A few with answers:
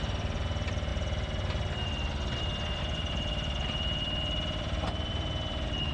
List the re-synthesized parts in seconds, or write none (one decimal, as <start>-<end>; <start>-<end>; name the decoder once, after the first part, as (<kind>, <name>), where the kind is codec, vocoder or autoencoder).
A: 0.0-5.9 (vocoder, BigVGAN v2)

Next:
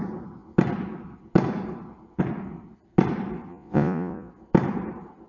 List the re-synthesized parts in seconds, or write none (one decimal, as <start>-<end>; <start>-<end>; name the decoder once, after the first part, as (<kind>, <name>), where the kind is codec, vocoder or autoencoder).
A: 3.5-4.3 (vocoder, Vocos)

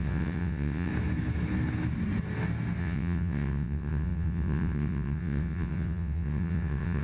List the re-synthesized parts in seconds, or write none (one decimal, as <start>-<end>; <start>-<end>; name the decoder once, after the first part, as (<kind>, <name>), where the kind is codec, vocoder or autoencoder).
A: 0.0-0.9 (vocoder, WaveNeXt); 2.8-7.0

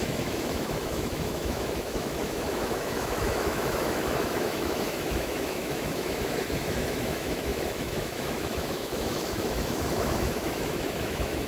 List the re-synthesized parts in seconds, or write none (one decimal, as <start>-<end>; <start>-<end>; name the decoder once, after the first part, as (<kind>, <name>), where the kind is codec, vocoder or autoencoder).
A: 0.0-11.5 (autoencoder, DAC-VAE)